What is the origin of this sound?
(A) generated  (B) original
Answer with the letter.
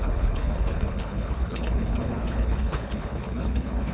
A